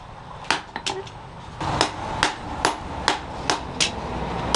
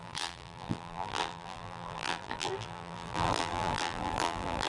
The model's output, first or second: second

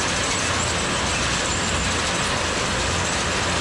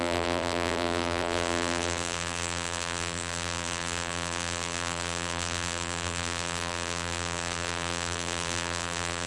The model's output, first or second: second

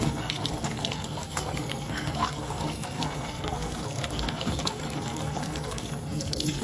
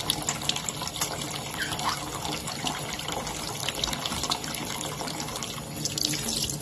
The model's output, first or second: first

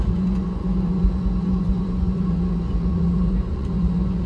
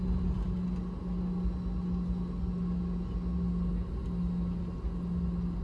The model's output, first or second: first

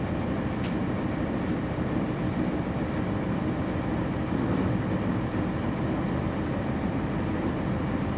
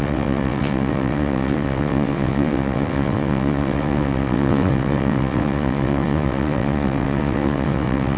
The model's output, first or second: second